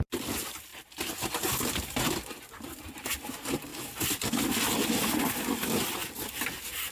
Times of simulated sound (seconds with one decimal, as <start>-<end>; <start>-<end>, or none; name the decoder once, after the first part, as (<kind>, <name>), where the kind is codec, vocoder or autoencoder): none